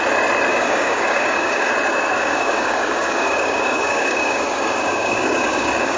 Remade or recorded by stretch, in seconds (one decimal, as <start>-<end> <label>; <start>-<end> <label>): 0.0-0.5 recorded; 0.5-1.7 remade; 1.7-2.2 recorded; 2.2-6.0 remade